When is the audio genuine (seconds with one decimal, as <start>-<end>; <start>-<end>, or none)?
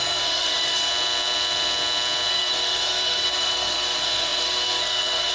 0.9-2.3